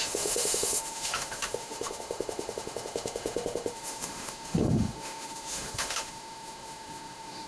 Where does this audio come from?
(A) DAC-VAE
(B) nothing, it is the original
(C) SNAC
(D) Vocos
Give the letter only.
A